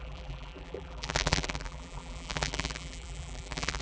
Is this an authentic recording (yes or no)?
no